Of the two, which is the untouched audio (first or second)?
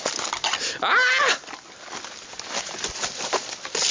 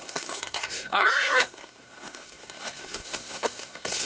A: first